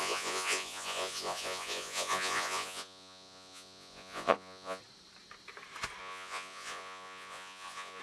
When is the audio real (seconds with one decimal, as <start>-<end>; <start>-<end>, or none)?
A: 4.8-6.0

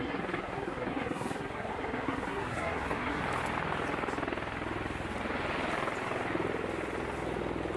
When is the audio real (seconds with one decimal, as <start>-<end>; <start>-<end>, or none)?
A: 3.2-7.8

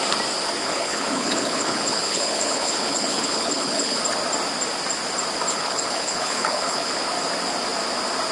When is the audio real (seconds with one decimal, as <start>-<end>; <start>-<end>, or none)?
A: 0.0-0.6; 4.0-5.5; 6.9-8.3

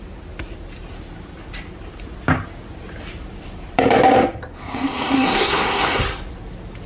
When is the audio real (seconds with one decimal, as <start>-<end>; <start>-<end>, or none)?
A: 0.0-4.5; 6.0-6.9

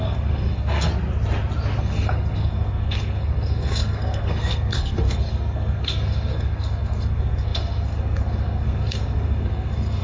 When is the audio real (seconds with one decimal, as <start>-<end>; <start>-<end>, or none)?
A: 0.9-1.8

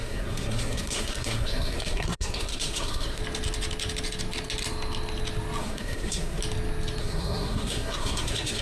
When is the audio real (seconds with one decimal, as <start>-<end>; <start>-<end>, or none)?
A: 3.2-5.6; 6.4-7.0

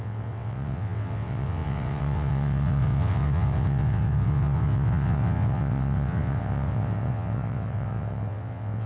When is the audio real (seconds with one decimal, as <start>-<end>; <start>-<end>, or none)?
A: none

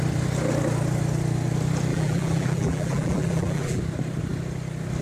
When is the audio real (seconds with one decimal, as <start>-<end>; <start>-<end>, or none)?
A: 0.0-1.9; 3.8-5.0